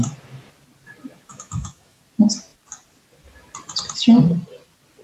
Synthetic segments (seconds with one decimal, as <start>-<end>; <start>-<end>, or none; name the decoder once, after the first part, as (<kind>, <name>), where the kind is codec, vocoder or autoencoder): 1.3-2.0 (autoencoder, DAC-VAE)